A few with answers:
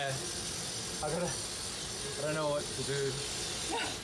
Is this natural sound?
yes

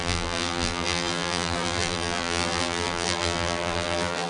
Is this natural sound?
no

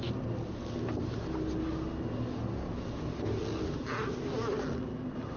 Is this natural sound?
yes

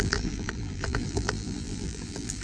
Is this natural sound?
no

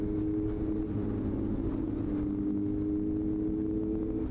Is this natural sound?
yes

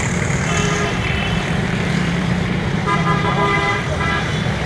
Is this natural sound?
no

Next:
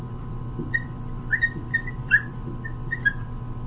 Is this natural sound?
no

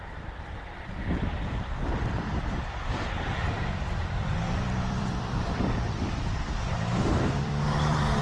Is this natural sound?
no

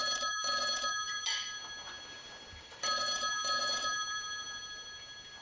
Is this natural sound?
no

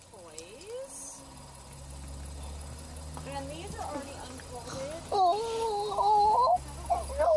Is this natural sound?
yes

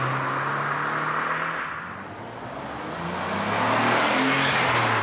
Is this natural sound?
yes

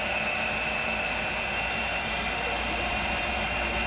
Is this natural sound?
no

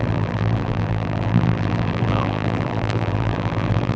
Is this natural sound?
no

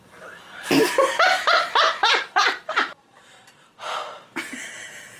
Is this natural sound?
no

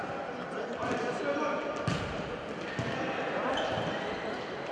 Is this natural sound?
yes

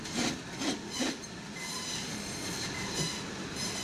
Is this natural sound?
yes